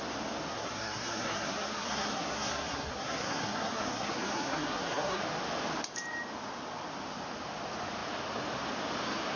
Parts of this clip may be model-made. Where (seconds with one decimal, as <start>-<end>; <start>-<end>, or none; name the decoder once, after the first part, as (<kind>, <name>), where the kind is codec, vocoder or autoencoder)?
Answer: 0.5-5.2 (codec, SNAC)